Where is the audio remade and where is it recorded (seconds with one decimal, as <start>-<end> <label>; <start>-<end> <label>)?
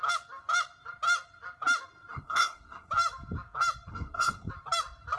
0.0-2.1 recorded; 2.1-2.9 remade; 2.9-3.9 recorded; 3.9-4.5 remade; 4.5-5.2 recorded